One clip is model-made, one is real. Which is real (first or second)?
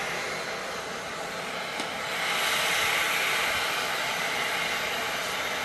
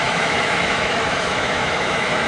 first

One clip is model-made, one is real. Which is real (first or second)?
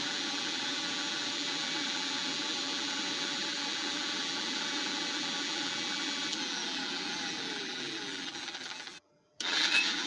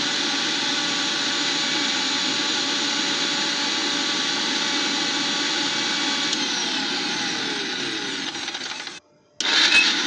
second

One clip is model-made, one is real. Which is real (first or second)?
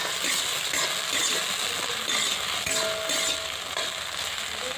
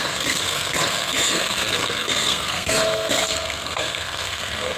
first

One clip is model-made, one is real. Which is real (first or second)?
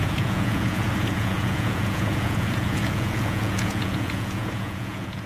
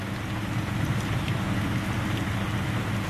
second